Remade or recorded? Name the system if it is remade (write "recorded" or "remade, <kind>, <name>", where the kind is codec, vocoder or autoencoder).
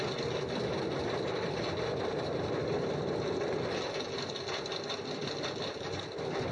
recorded